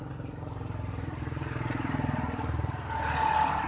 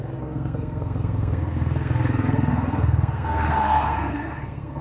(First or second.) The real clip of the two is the first